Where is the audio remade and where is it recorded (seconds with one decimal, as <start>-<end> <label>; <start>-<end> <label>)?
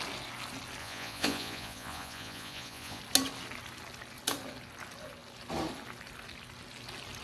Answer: 0.0-0.8 recorded; 0.8-3.0 remade; 3.0-7.2 recorded